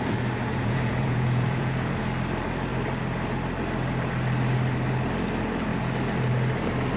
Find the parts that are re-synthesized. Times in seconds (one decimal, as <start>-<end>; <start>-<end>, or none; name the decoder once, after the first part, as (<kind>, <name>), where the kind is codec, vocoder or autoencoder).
0.5-2.0 (vocoder, Vocos)